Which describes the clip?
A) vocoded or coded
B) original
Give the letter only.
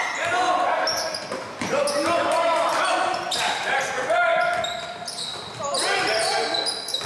B